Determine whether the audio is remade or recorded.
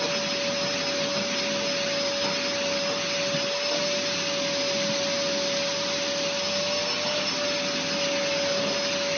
recorded